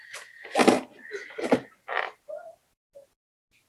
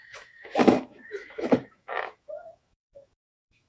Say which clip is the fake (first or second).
second